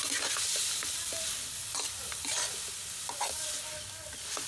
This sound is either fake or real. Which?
real